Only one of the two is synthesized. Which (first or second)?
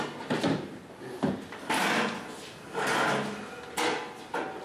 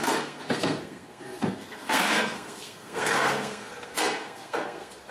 second